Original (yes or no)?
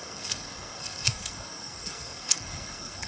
no